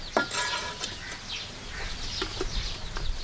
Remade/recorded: recorded